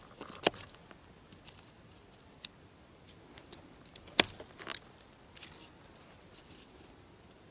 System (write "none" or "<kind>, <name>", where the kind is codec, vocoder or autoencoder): none